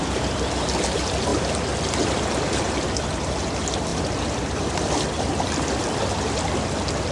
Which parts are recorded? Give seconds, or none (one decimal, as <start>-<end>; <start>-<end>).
0.0-3.9; 6.0-7.1